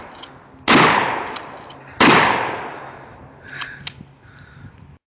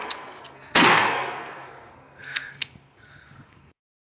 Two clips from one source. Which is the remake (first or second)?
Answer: second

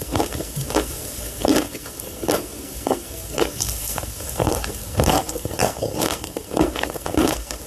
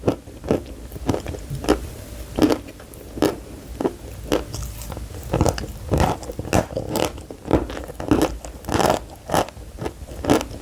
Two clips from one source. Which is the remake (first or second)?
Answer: first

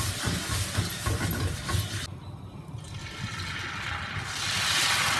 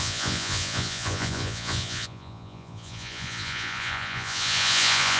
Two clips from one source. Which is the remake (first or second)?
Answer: second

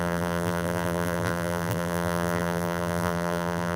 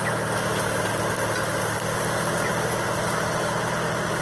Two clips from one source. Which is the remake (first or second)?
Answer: first